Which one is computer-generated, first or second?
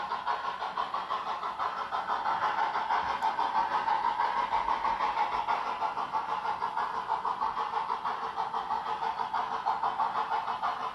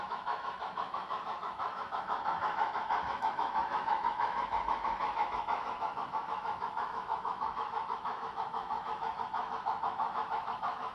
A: second